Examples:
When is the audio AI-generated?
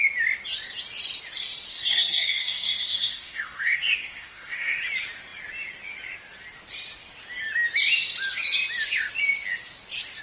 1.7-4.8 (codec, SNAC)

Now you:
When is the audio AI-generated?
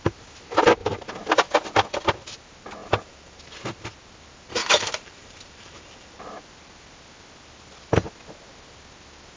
2.8-3.4 (vocoder, BigVGAN v2); 4.6-6.2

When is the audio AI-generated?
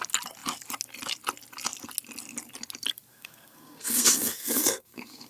3.1-5.3 (codec, SNAC)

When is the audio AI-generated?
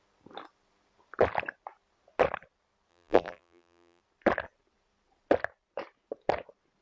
2.9-4.0 (vocoder, BigVGAN v2)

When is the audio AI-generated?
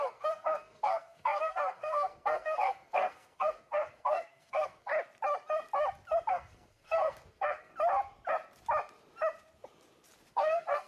0.0-4.9 (codec, SNAC); 6.3-7.7; 10.3-10.9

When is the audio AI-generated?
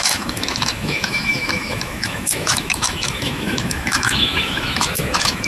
0.0-5.5 (autoencoder, DAC-VAE)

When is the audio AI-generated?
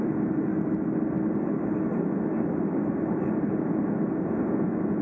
none